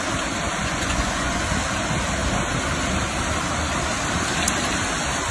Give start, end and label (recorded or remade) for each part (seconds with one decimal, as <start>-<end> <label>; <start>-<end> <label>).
0.0-0.6 recorded; 0.6-1.4 remade; 1.4-5.3 recorded

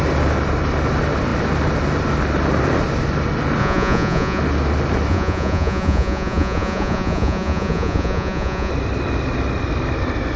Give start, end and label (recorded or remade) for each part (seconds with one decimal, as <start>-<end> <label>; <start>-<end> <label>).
0.0-3.6 recorded; 3.6-4.4 remade; 4.4-5.1 recorded; 5.1-8.7 remade; 8.7-10.4 recorded

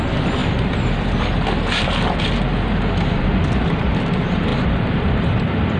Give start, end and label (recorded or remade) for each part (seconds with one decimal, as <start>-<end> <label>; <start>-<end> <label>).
0.0-5.8 recorded

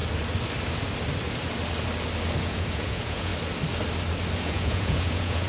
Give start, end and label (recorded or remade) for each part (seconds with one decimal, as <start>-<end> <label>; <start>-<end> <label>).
0.0-2.4 recorded; 2.4-3.3 remade; 3.3-4.4 recorded; 4.4-5.5 remade

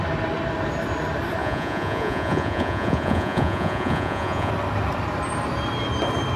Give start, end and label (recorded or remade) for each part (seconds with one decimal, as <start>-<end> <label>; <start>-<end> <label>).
0.0-1.4 recorded; 1.4-4.5 remade; 4.5-6.4 recorded

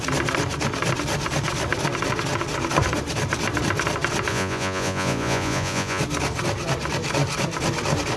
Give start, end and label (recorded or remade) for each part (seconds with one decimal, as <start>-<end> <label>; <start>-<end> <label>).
0.0-4.3 recorded; 4.3-6.0 remade; 6.0-8.2 recorded

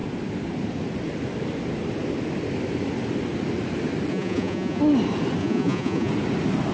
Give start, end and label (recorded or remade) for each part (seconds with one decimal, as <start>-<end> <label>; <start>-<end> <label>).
0.0-4.1 recorded; 4.1-4.8 remade; 4.8-5.4 recorded; 5.4-6.1 remade; 6.1-6.7 recorded

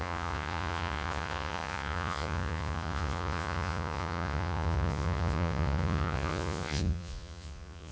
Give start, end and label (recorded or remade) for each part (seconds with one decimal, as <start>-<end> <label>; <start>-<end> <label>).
0.0-7.9 remade